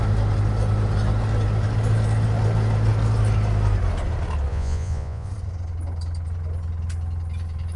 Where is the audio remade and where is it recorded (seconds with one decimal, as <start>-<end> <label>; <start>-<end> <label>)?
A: 0.0-4.5 recorded; 4.5-5.3 remade; 5.3-7.8 recorded